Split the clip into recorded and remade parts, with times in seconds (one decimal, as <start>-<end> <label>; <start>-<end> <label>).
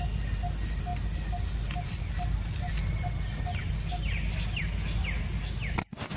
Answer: 0.0-6.2 recorded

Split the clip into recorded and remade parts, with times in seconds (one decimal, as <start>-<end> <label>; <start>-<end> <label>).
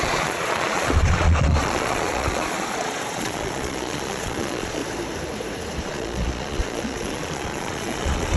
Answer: 0.0-4.8 remade; 4.8-5.8 recorded; 5.8-8.4 remade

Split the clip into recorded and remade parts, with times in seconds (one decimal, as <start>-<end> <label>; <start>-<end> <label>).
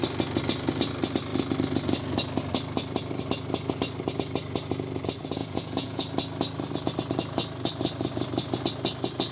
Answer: 0.0-5.4 recorded; 5.4-6.0 remade; 6.0-9.3 recorded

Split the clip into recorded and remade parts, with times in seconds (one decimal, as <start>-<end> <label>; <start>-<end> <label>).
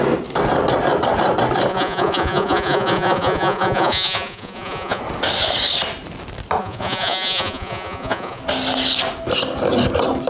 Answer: 0.0-1.7 recorded; 1.7-5.0 remade; 5.0-6.6 recorded; 6.6-8.4 remade; 8.4-10.3 recorded